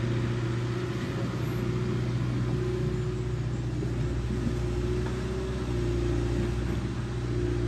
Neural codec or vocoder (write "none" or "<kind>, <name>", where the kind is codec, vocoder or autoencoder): none